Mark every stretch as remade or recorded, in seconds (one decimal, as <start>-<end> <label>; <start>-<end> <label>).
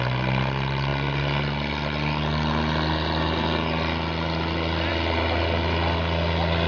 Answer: 0.0-6.7 recorded